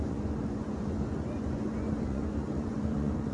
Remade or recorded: remade